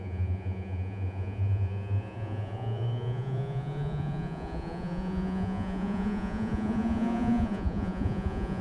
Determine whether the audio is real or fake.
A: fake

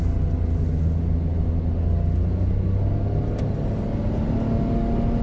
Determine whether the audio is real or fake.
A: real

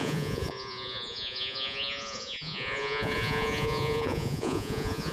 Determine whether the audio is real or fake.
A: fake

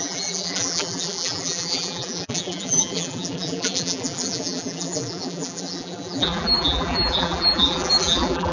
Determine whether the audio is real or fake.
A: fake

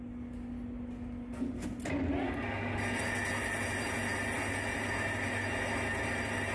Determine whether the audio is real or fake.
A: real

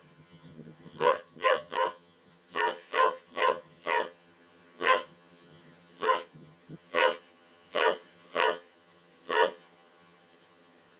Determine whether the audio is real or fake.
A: fake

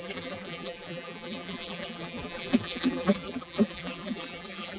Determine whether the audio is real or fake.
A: fake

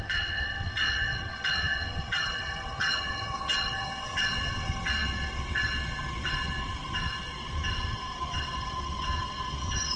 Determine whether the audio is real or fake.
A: fake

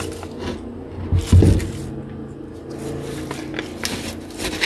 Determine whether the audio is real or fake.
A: real